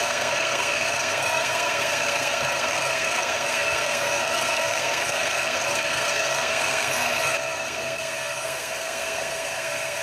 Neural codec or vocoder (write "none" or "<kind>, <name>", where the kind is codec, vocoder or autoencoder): codec, SNAC